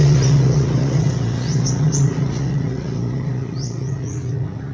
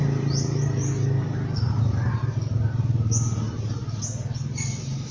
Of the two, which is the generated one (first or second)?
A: first